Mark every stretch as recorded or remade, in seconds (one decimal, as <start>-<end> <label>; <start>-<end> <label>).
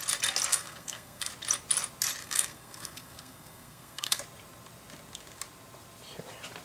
0.0-0.5 recorded; 0.5-1.3 remade; 1.3-2.2 recorded; 2.2-4.2 remade; 4.2-6.6 recorded